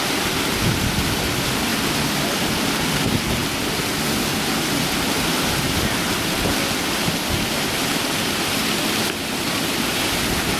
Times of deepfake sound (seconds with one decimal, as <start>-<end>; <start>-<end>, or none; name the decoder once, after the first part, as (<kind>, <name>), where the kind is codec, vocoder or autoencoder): none